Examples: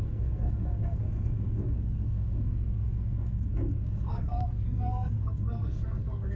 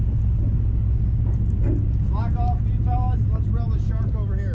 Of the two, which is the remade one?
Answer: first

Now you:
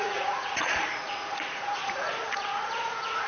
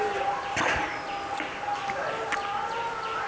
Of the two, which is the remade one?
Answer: first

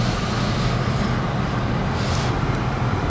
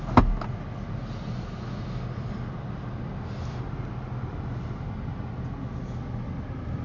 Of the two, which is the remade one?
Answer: first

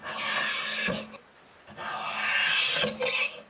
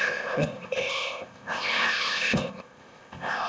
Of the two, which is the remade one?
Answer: second